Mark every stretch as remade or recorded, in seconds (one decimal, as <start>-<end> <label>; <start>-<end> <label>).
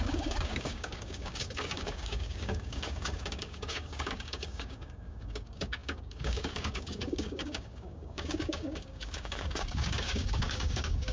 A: 0.0-11.1 remade